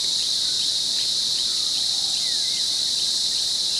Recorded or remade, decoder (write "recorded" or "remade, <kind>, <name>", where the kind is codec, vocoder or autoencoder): remade, vocoder, BigVGAN v2